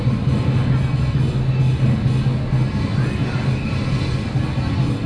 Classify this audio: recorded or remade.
recorded